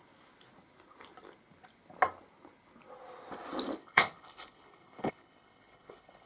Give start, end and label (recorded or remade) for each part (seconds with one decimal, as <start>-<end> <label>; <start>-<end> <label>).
0.0-3.8 recorded; 3.8-6.3 remade